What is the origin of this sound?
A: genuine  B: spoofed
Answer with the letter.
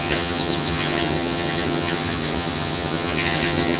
B